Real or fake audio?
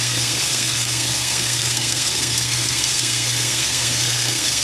fake